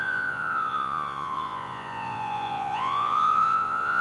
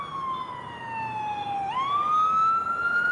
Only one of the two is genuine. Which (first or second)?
second